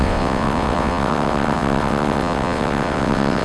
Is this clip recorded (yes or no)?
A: no